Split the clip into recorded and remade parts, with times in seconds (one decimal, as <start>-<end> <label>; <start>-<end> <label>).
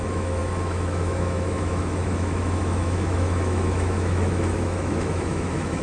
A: 0.0-5.8 remade